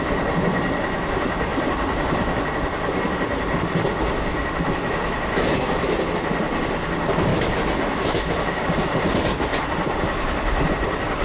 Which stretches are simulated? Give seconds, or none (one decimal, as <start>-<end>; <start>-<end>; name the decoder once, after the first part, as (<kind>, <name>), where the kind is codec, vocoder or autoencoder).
4.3-6.2 (autoencoder, DAC-VAE); 7.3-8.6